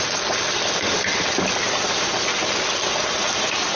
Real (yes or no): yes